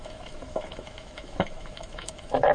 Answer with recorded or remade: remade